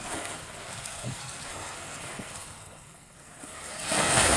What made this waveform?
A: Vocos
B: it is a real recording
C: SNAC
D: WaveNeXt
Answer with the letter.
C